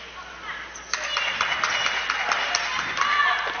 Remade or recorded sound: recorded